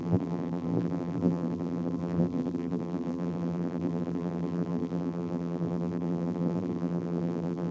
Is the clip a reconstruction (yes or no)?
yes